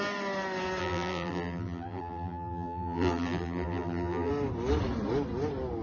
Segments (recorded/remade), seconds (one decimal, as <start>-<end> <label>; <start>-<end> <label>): 0.0-0.8 recorded; 0.8-4.3 remade; 4.3-5.8 recorded